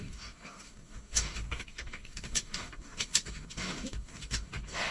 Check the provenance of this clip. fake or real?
fake